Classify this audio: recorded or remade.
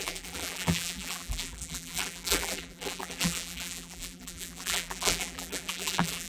remade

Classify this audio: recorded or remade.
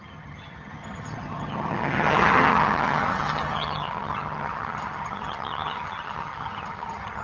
remade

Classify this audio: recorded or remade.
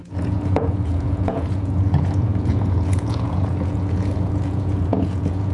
remade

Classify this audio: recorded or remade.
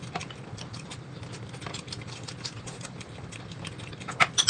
recorded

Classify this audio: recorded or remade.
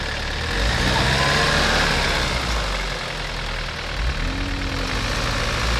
recorded